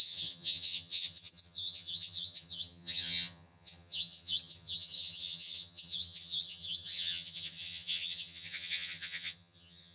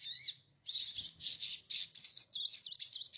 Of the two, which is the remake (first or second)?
first